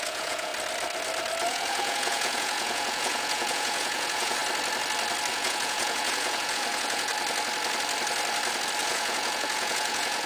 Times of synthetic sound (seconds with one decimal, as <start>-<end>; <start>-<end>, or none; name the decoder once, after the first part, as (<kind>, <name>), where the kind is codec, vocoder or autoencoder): 0.0-0.5 (vocoder, Vocos); 1.5-4.4; 5.3-7.1; 8.8-10.3